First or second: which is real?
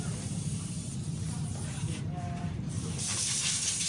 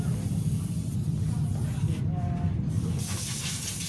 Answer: second